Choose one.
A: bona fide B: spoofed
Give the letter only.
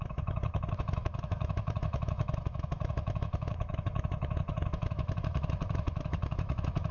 B